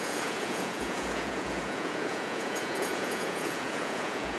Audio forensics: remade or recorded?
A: remade